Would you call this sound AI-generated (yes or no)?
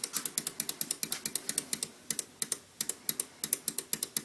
no